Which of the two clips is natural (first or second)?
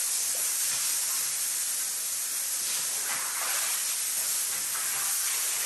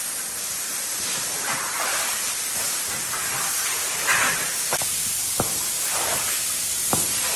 first